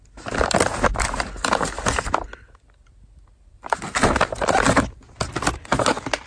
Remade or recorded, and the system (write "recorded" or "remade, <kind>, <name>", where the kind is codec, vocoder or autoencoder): recorded